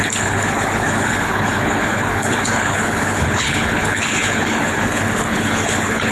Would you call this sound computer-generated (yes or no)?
yes